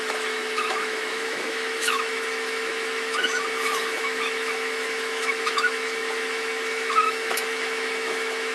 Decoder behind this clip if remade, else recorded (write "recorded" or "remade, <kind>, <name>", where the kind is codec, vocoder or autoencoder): remade, autoencoder, DAC-VAE